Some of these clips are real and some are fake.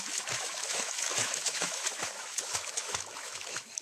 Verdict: fake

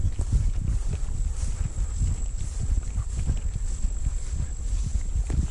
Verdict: real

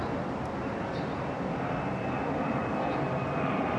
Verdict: fake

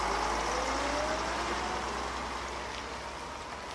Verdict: real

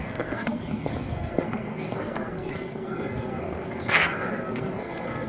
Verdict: fake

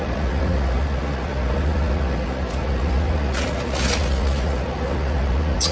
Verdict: fake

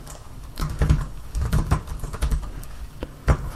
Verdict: fake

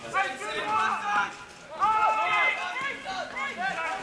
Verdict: real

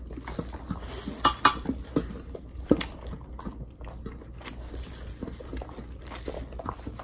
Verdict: real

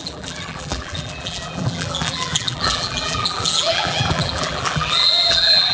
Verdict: fake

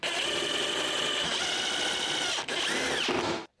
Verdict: real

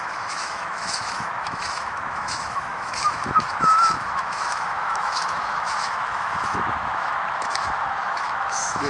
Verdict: fake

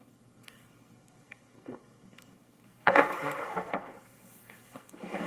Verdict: fake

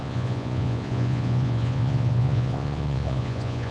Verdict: fake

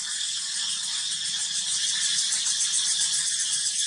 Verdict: real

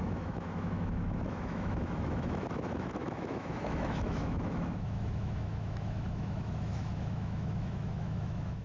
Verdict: fake